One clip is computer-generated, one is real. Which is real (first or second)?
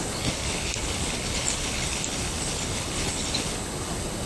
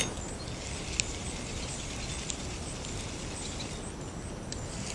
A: second